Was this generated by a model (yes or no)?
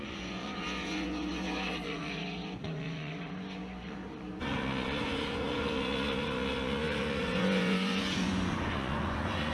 yes